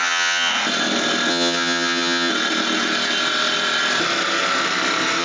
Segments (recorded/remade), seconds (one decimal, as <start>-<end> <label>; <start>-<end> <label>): 0.0-0.5 remade; 0.5-1.3 recorded; 1.3-2.3 remade; 2.3-5.2 recorded